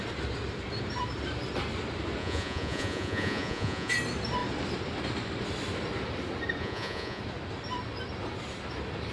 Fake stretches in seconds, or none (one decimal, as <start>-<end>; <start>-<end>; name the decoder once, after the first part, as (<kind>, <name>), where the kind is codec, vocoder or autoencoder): 2.2-3.9 (vocoder, Vocos); 6.6-7.2